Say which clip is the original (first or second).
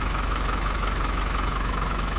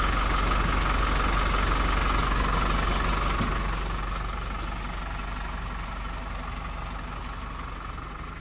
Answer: second